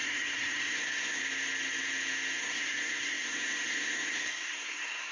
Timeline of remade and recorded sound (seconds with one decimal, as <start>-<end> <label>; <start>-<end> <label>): 0.0-1.2 remade; 1.2-2.4 recorded; 2.4-5.1 remade